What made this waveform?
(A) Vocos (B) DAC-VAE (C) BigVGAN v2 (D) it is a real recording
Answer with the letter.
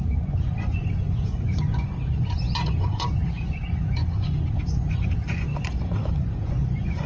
A